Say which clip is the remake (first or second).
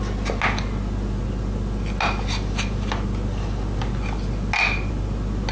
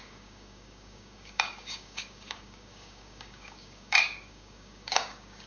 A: second